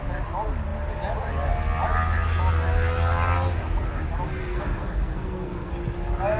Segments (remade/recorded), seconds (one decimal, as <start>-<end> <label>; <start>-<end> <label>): 0.0-4.4 recorded; 4.4-5.7 remade; 5.7-6.4 recorded